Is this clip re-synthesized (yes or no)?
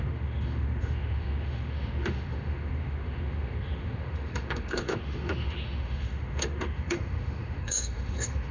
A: yes